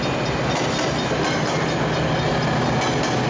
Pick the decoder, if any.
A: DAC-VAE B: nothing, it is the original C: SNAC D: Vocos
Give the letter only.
B